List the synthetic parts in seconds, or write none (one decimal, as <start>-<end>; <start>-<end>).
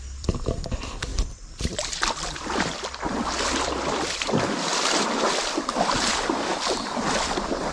0.0-7.7